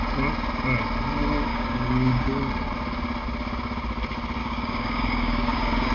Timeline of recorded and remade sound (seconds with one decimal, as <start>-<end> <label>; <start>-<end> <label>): 0.0-1.5 recorded; 1.5-2.5 remade; 2.5-4.4 recorded; 4.4-5.9 remade